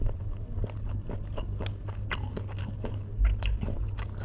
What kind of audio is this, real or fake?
real